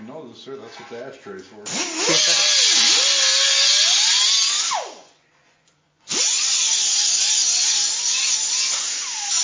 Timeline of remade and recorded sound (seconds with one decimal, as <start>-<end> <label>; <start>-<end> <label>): 0.0-5.0 recorded; 5.0-6.5 remade; 6.5-7.4 recorded; 7.4-9.4 remade